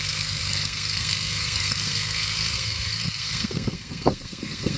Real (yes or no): no